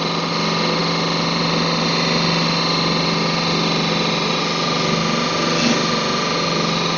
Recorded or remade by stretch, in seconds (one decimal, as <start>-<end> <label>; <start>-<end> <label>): 0.0-7.0 recorded